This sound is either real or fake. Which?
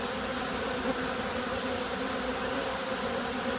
real